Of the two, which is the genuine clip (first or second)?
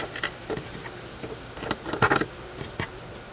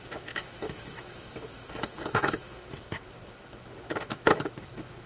first